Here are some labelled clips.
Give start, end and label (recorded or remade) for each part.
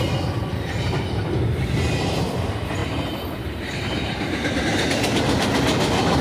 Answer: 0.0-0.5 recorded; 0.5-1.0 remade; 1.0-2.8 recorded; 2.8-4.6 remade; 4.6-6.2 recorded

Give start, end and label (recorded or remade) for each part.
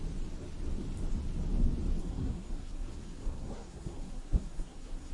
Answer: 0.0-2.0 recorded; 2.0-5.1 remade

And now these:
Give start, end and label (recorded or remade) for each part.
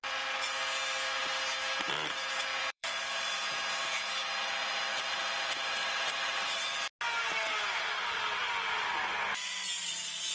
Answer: 0.0-2.5 recorded; 2.5-3.3 remade; 3.3-4.9 recorded; 4.9-6.6 remade; 6.6-10.3 recorded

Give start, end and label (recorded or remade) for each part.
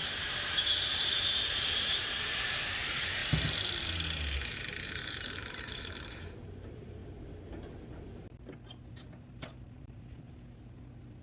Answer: 0.0-3.2 remade; 3.2-4.5 recorded; 4.5-7.0 remade; 7.0-8.9 recorded; 8.9-11.2 remade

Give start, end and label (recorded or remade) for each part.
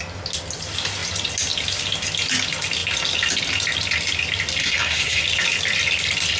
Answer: 0.0-4.6 recorded; 4.6-5.2 remade; 5.2-6.4 recorded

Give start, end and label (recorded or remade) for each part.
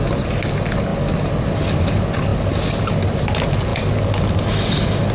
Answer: 0.0-5.1 recorded